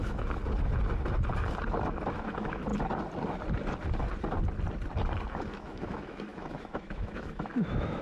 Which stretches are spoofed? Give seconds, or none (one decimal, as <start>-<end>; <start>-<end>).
0.0-0.4; 2.1-2.7; 5.4-8.0